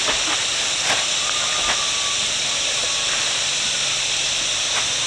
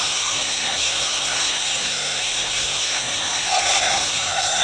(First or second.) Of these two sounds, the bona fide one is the first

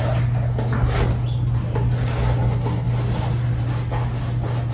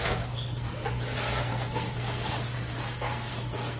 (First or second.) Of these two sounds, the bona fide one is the first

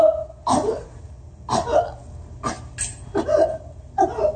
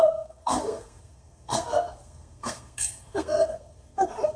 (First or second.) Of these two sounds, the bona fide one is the first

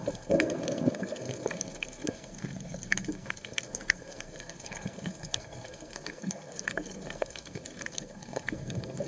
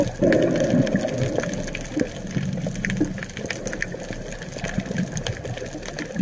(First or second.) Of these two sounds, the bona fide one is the second